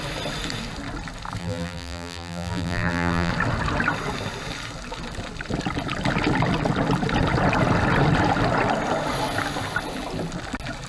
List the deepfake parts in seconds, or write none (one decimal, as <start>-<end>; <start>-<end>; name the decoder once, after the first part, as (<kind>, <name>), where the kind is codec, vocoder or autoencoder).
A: 1.4-3.3 (vocoder, BigVGAN v2)